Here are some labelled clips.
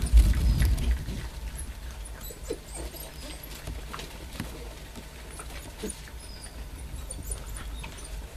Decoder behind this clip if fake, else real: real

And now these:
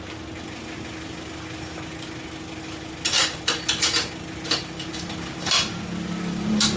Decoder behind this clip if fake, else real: real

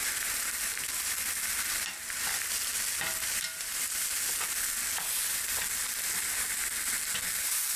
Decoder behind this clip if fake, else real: real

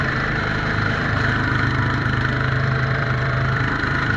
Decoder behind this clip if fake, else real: fake, vocoder, BigVGAN v2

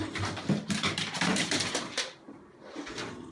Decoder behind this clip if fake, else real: fake, vocoder, BigVGAN v2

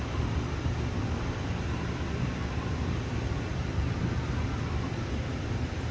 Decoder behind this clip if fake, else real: fake, vocoder, BigVGAN v2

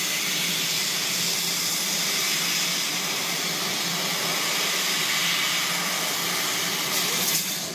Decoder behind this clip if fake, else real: real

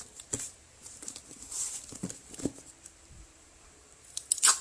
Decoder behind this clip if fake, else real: fake, vocoder, BigVGAN v2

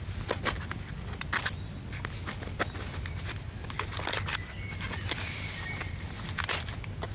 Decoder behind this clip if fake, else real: real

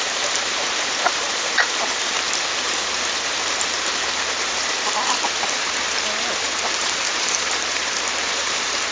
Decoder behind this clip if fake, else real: fake, vocoder, BigVGAN v2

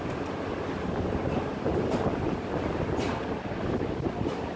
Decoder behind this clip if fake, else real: real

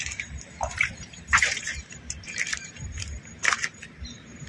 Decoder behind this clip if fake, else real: fake, vocoder, BigVGAN v2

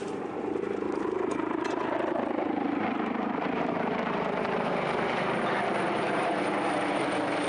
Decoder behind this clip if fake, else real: fake, vocoder, BigVGAN v2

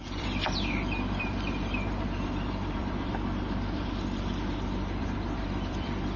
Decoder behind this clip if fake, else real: fake, vocoder, BigVGAN v2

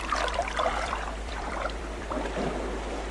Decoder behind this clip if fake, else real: fake, vocoder, BigVGAN v2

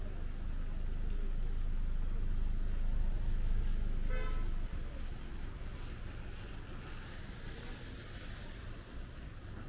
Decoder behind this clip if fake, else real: real